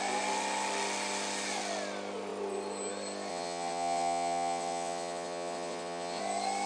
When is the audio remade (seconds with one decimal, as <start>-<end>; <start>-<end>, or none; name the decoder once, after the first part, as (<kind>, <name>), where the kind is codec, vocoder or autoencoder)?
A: 3.3-6.2 (vocoder, WaveNeXt)